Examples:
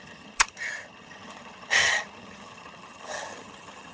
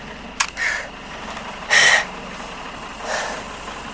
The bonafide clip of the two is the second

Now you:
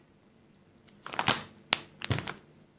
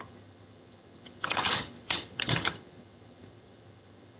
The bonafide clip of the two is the first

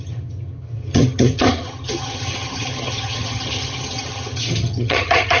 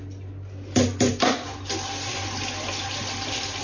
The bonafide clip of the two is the second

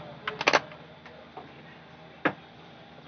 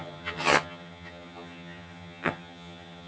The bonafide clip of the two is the first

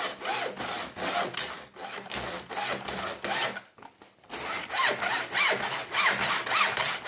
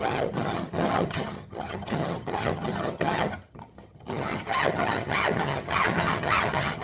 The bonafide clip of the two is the first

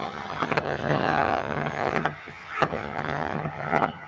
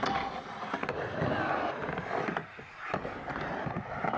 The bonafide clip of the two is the second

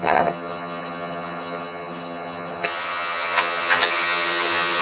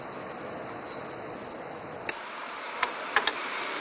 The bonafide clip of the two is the second